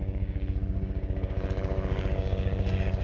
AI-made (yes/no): yes